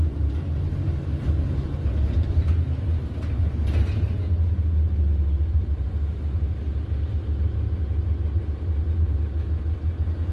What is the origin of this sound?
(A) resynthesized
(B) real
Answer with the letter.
B